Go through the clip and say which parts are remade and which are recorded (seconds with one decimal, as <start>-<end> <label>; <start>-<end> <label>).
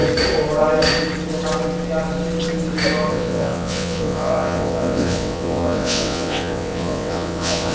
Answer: 0.0-3.1 recorded; 3.1-7.7 remade